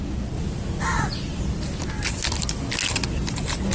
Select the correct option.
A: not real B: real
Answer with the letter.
B